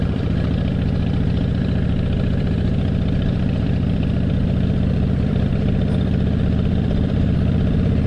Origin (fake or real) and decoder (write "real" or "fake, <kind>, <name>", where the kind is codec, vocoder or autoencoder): fake, vocoder, BigVGAN v2